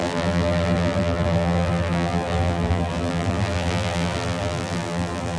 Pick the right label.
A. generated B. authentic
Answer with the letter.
A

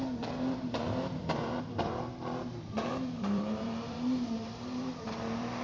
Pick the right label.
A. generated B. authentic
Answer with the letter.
A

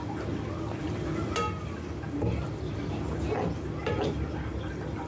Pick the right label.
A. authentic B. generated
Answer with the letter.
A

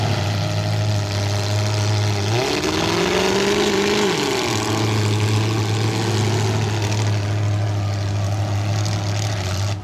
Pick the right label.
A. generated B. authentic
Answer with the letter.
B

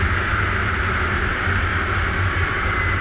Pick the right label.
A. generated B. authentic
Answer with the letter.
B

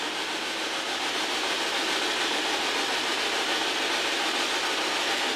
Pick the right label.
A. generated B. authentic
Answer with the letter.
B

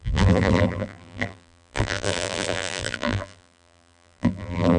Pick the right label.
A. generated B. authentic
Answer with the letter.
A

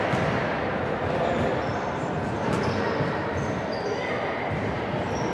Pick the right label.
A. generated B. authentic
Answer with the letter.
B